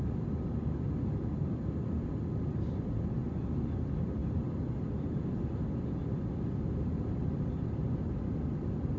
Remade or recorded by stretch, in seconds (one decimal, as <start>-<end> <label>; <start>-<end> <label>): 0.0-9.0 recorded